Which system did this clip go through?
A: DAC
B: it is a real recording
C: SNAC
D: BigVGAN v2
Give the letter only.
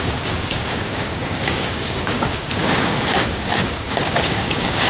A